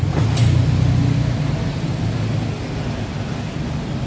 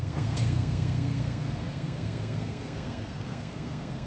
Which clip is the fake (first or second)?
second